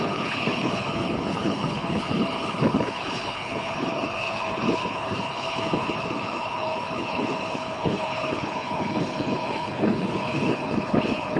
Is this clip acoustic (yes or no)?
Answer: no